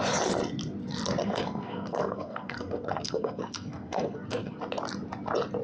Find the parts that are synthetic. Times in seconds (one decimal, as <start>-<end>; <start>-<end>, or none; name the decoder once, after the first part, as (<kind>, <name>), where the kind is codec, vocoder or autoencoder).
1.2-4.6 (codec, SNAC)